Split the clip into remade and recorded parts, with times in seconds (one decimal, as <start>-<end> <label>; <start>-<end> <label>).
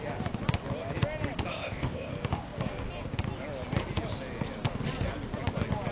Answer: 0.0-1.5 recorded; 1.5-2.1 remade; 2.1-5.9 recorded